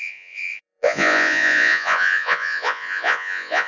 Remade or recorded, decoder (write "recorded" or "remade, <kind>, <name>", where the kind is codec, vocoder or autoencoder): remade, vocoder, Vocos